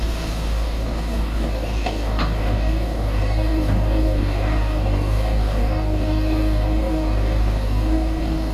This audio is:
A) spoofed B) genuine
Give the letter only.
A